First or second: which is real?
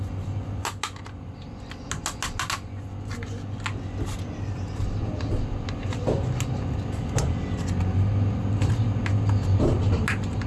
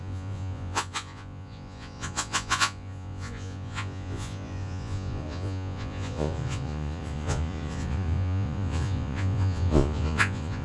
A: first